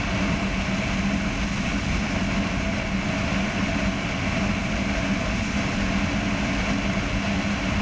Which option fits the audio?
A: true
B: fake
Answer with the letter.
A